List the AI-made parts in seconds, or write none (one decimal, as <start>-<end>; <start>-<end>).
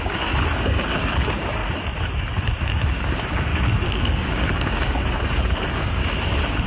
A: 0.0-1.6; 2.6-6.0